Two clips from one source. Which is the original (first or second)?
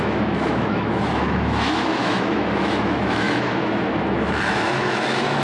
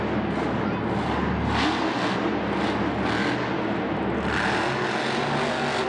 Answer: second